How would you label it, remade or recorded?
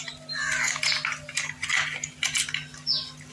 recorded